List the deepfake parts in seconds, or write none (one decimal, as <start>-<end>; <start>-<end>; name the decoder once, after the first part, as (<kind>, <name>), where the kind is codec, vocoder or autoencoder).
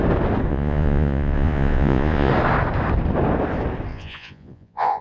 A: 0.5-2.3 (vocoder, Vocos); 3.9-5.0